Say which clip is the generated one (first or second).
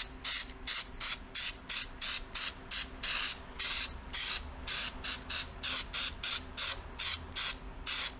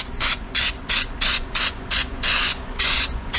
second